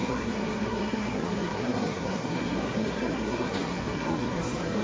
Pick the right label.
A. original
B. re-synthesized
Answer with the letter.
B